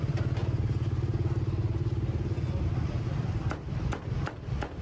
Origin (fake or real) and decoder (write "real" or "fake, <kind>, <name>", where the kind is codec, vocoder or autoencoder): fake, vocoder, BigVGAN v2